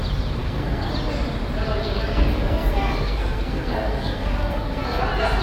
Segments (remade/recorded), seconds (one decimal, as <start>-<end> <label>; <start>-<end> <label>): 0.0-0.4 recorded; 0.4-0.9 remade; 0.9-1.8 recorded; 1.8-5.0 remade; 5.0-5.4 recorded